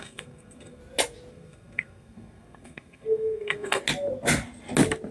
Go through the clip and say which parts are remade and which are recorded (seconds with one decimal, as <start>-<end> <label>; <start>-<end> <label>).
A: 0.0-0.8 remade; 0.8-1.3 recorded; 1.3-3.8 remade; 3.8-5.1 recorded